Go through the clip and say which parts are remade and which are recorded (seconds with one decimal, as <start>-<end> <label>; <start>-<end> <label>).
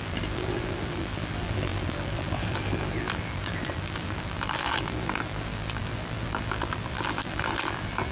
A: 0.0-8.1 remade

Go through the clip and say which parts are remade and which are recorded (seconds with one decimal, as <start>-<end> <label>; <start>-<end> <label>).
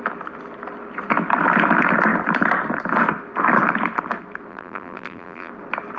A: 0.0-4.5 recorded; 4.5-5.5 remade; 5.5-6.0 recorded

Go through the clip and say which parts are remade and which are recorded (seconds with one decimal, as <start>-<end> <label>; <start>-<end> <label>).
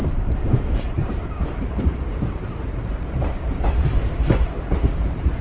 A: 0.0-5.4 remade